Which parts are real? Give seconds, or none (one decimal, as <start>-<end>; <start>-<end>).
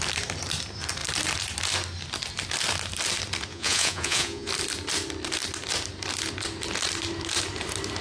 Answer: 0.0-3.5; 4.5-8.0